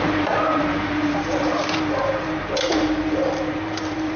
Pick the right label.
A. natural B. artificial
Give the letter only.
B